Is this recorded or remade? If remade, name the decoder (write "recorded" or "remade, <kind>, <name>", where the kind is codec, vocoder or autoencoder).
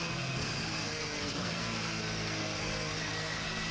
remade, codec, SNAC